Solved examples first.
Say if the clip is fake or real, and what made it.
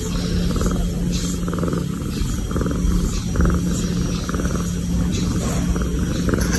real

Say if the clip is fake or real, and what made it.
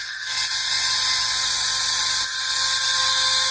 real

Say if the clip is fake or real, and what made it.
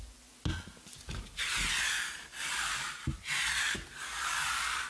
real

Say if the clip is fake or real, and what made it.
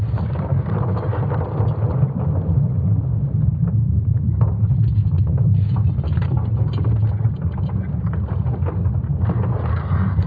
real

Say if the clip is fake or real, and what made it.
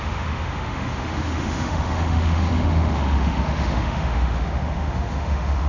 fake, autoencoder, DAC-VAE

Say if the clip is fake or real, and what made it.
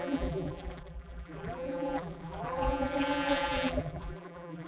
fake, vocoder, BigVGAN v2